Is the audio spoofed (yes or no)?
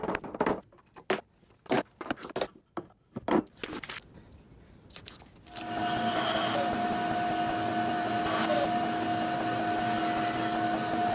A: no